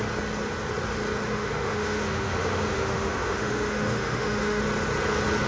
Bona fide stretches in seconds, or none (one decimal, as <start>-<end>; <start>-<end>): 0.0-1.3; 4.6-5.5